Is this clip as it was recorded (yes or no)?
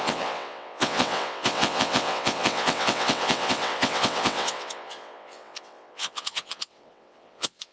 no